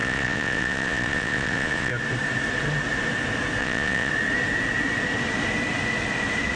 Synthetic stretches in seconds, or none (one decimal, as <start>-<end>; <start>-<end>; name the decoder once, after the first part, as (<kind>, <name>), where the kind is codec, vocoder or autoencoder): 0.0-1.9 (vocoder, Vocos); 3.6-4.1